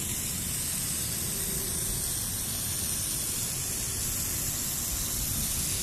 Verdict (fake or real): real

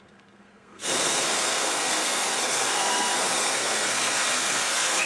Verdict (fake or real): fake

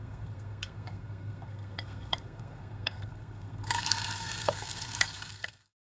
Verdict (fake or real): fake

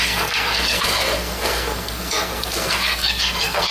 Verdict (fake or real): fake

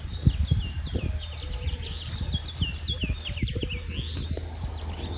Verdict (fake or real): real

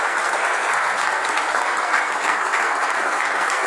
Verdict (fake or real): fake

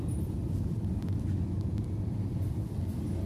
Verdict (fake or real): real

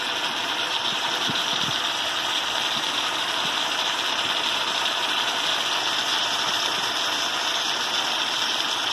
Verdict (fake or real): real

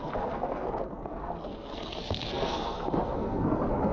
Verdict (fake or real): fake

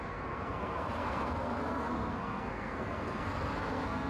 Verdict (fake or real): fake